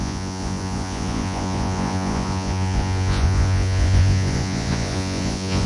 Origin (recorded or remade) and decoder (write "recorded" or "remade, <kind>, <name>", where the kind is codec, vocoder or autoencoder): remade, vocoder, Vocos